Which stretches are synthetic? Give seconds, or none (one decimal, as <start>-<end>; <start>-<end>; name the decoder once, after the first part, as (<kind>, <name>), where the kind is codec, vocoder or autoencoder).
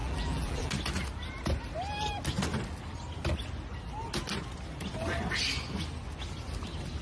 0.0-0.7 (vocoder, BigVGAN v2)